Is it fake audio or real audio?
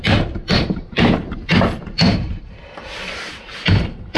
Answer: fake